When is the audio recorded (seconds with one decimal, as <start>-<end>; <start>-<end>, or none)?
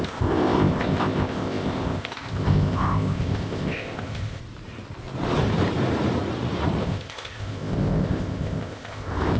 4.4-6.8